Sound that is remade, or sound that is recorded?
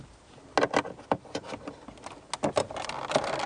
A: recorded